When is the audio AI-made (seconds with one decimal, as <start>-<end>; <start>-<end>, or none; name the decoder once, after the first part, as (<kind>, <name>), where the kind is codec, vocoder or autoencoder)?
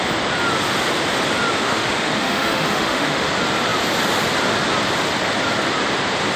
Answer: 1.6-3.3 (autoencoder, DAC-VAE)